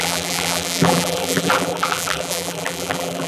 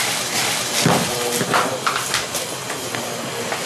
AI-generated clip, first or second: first